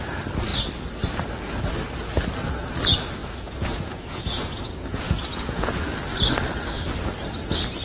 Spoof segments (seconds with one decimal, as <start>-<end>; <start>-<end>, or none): 3.2-5.9